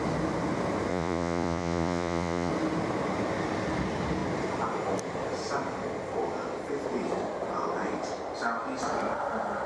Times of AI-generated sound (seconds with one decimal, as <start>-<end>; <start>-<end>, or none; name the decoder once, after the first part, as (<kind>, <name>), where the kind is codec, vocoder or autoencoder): 0.9-2.5 (vocoder, Vocos)